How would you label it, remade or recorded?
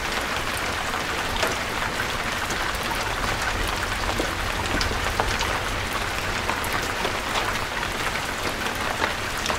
recorded